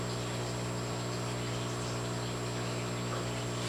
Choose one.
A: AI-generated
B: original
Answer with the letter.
B